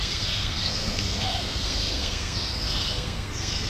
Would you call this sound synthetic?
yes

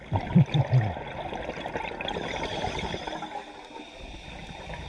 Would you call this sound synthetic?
no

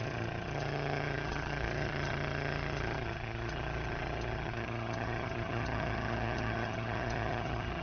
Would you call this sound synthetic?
yes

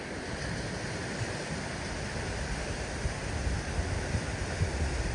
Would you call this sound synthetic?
no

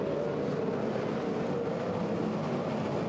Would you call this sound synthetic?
no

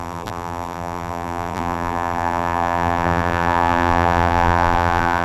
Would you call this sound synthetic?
yes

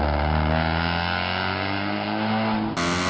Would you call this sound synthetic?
no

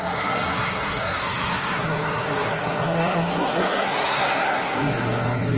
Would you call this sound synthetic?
yes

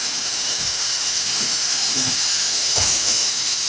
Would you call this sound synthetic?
yes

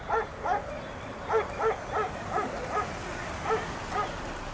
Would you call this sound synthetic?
no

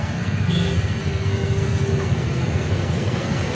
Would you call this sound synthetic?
yes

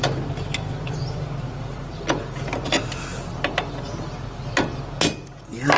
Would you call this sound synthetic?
no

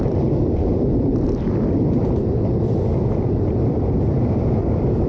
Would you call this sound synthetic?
yes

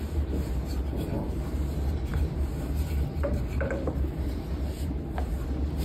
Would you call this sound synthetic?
yes